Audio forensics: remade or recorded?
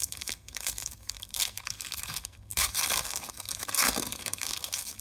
remade